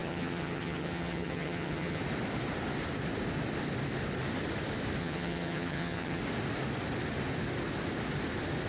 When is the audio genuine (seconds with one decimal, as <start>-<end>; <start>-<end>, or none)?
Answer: 2.0-5.0; 6.2-8.7